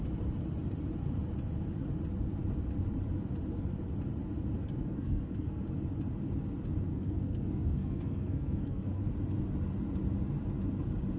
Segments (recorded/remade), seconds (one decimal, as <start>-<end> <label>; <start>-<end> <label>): 0.0-4.6 recorded; 4.6-5.6 remade; 5.6-6.9 recorded; 6.9-9.0 remade; 9.0-11.2 recorded